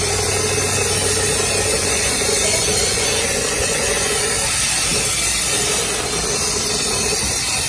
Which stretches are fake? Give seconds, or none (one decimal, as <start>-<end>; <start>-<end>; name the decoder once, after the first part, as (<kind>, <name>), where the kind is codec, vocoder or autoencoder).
1.7-4.3 (vocoder, Vocos)